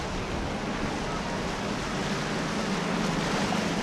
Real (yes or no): yes